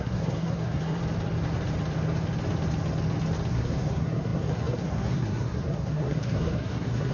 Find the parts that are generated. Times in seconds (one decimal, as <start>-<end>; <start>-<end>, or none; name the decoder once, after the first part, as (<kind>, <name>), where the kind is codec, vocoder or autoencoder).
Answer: 0.0-1.0 (codec, SNAC); 3.5-7.1